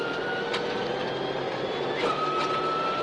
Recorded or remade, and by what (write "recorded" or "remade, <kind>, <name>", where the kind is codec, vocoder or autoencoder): recorded